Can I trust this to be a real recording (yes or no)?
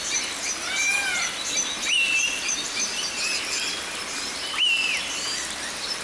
yes